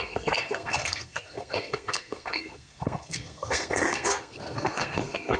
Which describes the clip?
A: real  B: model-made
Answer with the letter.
B